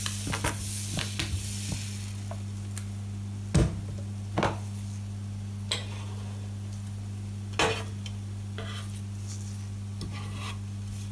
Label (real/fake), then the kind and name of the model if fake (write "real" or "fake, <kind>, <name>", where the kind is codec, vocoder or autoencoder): real